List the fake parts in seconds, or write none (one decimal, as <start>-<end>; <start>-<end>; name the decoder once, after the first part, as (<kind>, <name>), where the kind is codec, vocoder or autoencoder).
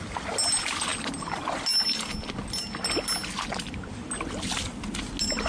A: none